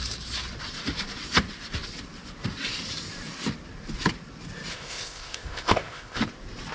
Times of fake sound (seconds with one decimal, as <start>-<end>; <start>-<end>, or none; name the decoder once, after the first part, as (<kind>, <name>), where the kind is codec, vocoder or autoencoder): 4.7-6.2 (codec, ZipCodec)